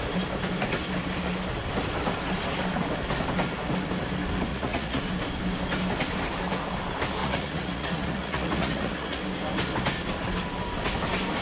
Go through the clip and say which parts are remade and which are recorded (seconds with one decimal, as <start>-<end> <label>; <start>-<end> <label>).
0.0-4.5 recorded; 4.5-5.0 remade; 5.0-7.2 recorded; 7.2-9.2 remade; 9.2-11.4 recorded